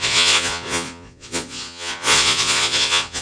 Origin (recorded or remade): remade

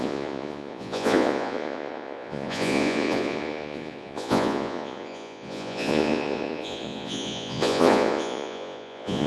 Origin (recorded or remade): remade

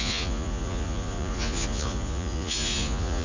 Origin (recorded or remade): remade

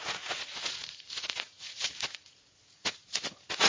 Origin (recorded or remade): remade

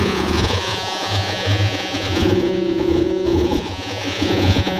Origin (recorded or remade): remade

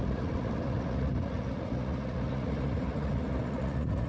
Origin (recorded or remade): remade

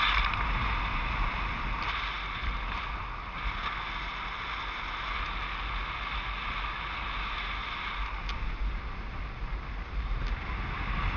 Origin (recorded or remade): recorded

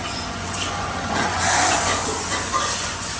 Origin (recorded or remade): remade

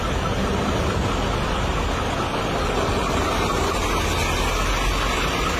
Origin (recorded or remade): recorded